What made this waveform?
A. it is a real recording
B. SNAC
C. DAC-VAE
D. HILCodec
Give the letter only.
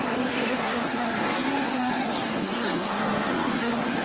B